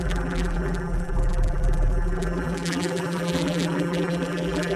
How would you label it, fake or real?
fake